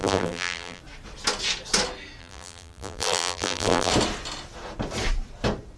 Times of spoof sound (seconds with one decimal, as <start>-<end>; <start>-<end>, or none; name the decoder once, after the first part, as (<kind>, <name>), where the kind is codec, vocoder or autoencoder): 0.0-0.8 (vocoder, BigVGAN v2); 2.2-3.9